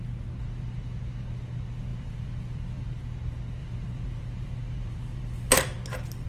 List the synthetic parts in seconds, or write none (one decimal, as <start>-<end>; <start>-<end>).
1.9-3.0; 3.6-5.6

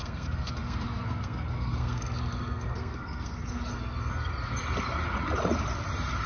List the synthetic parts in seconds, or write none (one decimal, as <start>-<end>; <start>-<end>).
0.0-4.3

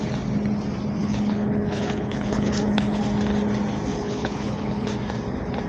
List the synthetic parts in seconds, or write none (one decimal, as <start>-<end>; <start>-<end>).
1.0-3.0; 3.9-4.9

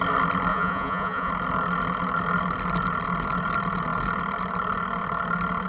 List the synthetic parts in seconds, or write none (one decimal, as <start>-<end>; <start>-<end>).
0.5-1.3